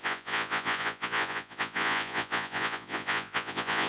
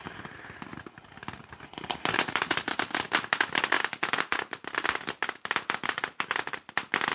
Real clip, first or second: second